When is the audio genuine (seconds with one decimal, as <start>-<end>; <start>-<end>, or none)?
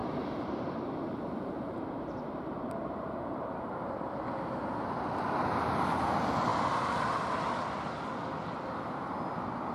4.1-9.7